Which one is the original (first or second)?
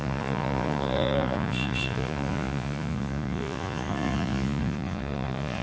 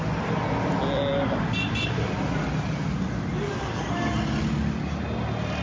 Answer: second